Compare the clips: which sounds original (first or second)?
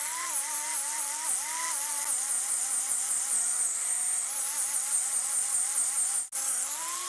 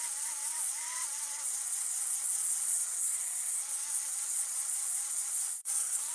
first